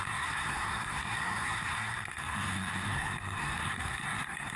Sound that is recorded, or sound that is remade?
remade